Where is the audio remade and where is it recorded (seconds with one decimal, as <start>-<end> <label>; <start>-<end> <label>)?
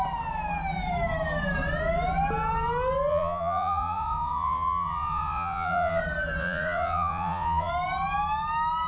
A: 0.0-3.1 recorded; 3.1-6.0 remade; 6.0-6.4 recorded; 6.4-7.7 remade; 7.7-8.9 recorded